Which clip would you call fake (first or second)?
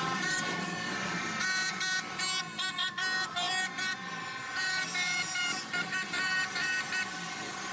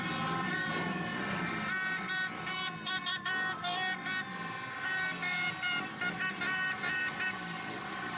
first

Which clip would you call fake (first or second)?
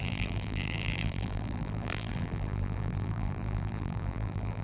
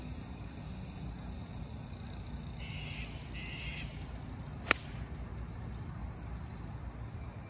first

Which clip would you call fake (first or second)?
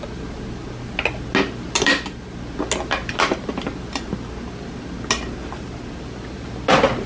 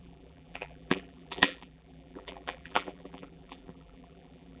second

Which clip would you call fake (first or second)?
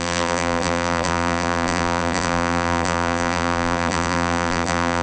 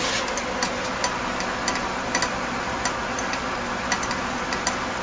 first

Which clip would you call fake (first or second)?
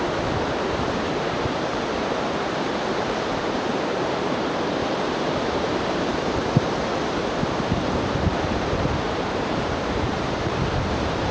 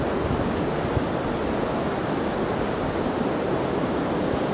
first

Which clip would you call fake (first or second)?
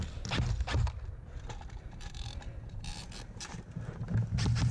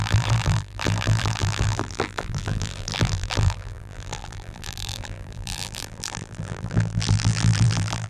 second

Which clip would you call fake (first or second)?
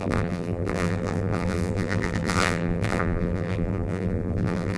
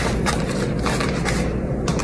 first